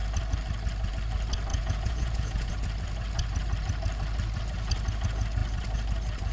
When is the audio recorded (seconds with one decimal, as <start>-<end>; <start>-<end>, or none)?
0.0-1.5; 2.5-6.3

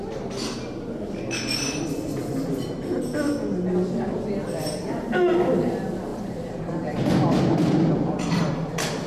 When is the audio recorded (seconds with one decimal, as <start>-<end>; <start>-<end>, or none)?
0.0-6.1; 8.7-9.1

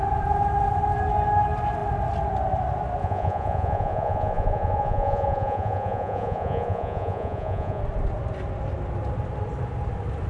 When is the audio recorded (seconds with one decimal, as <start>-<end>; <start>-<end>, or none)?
0.0-3.0; 7.8-10.3